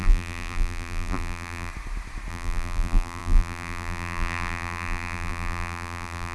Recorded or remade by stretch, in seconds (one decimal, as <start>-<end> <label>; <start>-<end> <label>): 0.0-1.7 remade; 1.7-2.3 recorded; 2.3-6.3 remade